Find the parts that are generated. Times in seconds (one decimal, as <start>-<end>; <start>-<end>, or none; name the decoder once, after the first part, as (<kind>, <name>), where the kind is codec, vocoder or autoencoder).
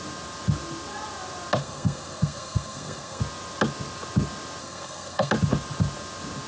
1.6-3.2 (codec, SNAC); 4.6-5.3